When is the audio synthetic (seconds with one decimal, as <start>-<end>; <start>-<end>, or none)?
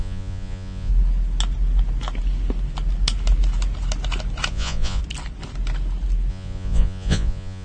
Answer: 0.0-0.9; 4.5-5.0; 6.3-7.6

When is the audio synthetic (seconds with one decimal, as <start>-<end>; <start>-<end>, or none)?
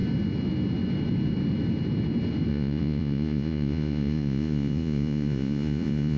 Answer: 2.5-6.2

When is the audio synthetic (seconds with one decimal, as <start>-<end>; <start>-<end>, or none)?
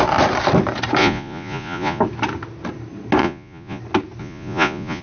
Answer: 1.0-2.0; 3.2-3.8; 4.2-5.0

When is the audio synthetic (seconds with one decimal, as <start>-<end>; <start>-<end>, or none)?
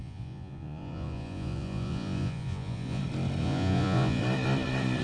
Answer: 0.0-3.0; 3.4-4.2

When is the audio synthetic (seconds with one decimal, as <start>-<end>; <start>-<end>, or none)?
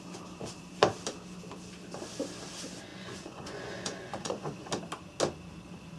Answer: 2.9-4.7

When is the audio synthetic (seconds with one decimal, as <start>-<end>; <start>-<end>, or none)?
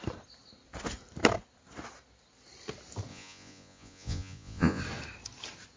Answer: 3.1-4.8